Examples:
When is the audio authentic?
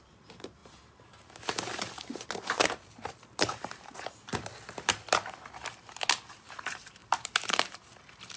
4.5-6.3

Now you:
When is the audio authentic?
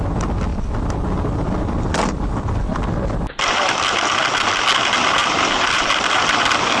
0.0-0.5; 4.6-5.2; 5.9-6.8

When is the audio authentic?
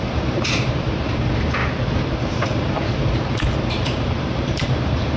1.6-2.2